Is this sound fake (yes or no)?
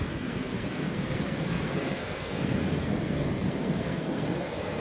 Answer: yes